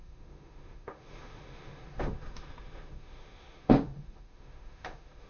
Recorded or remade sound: remade